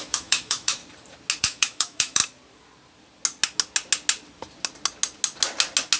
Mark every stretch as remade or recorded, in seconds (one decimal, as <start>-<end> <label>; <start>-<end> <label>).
0.0-0.8 remade; 0.8-1.4 recorded; 1.4-2.2 remade; 2.2-6.0 recorded